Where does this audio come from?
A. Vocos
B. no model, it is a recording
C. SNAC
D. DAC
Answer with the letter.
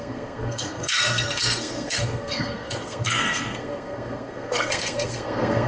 C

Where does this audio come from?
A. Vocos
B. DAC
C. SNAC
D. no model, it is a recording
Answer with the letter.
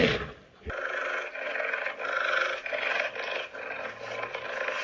D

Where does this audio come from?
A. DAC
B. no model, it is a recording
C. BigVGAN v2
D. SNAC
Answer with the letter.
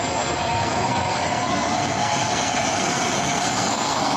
D